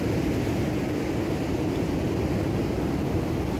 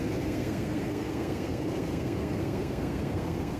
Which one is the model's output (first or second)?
second